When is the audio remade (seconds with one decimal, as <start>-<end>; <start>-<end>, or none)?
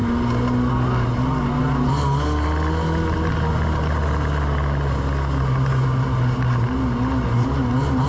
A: none